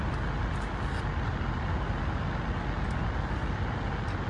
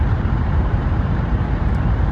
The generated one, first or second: second